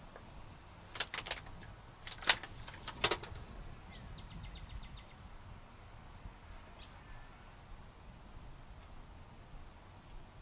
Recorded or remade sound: recorded